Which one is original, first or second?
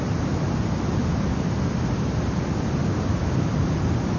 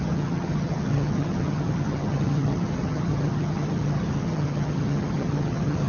first